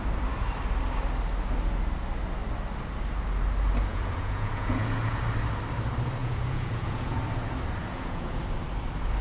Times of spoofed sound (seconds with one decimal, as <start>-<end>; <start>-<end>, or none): 3.9-5.2; 6.2-7.2; 7.8-8.4